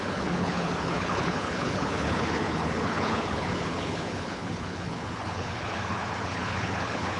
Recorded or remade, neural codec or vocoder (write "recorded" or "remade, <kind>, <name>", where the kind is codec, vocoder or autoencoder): remade, codec, HILCodec